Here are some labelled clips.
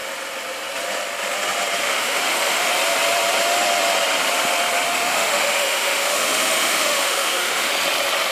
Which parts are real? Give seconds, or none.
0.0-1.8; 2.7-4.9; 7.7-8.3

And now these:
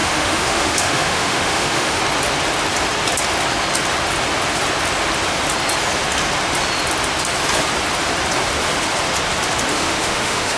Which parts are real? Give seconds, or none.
2.0-9.7

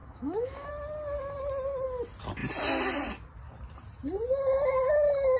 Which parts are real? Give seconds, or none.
0.7-5.4

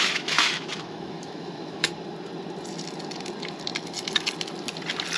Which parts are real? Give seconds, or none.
1.9-5.2

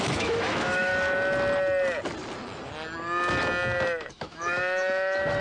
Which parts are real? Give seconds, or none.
0.9-4.1

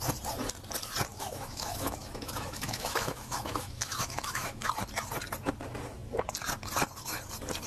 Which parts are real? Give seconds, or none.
0.0-1.1; 4.7-7.7

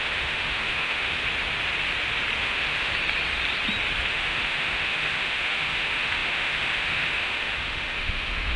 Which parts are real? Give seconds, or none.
1.2-2.4; 2.9-4.1